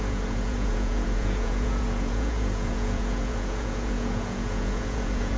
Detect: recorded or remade remade